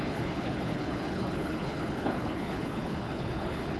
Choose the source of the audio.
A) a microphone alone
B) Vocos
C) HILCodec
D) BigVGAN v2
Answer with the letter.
C